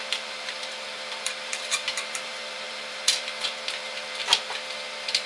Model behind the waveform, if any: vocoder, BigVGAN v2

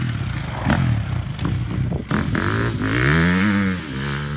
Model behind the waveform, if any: none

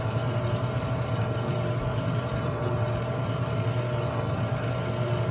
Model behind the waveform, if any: vocoder, BigVGAN v2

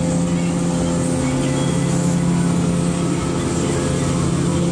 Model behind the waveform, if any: none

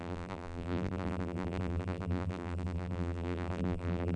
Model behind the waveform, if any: vocoder, BigVGAN v2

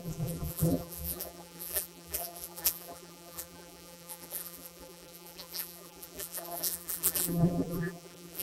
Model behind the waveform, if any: vocoder, BigVGAN v2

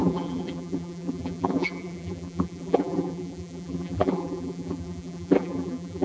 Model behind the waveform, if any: vocoder, BigVGAN v2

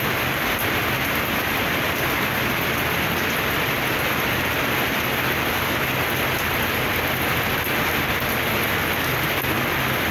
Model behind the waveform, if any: none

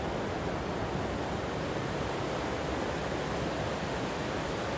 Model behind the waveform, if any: none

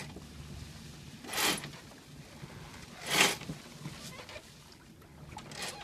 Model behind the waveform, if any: none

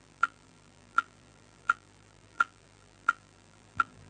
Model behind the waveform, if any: vocoder, BigVGAN v2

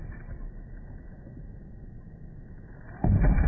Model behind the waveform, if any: none